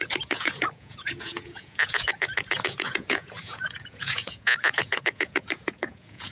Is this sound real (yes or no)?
no